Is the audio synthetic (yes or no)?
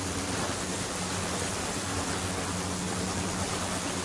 no